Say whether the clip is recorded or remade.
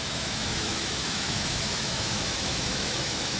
remade